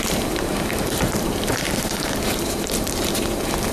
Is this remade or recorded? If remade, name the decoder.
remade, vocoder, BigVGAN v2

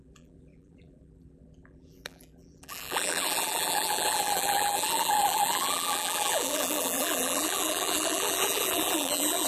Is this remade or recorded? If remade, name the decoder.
remade, vocoder, BigVGAN v2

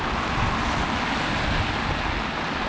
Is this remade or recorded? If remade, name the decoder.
recorded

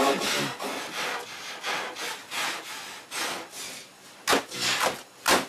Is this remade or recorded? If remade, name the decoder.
recorded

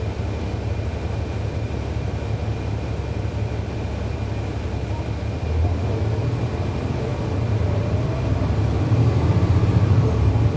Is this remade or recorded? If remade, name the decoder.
recorded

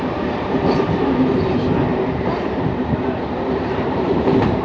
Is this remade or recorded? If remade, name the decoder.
remade, vocoder, BigVGAN v2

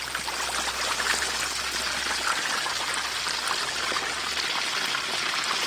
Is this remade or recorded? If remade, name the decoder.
recorded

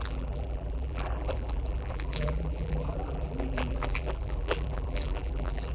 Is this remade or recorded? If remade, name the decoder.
remade, vocoder, BigVGAN v2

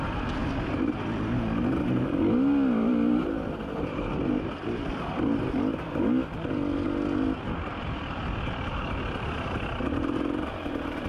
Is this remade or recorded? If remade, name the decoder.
recorded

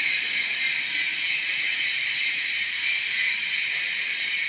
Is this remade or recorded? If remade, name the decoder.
remade, vocoder, BigVGAN v2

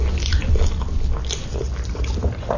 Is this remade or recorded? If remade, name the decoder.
recorded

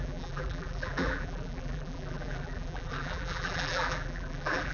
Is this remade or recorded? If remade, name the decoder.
remade, vocoder, BigVGAN v2